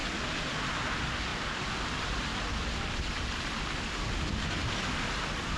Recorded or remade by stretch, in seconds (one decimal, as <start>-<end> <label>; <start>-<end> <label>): 0.0-5.6 recorded